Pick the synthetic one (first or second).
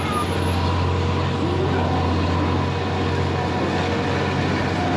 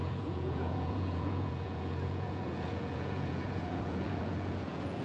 second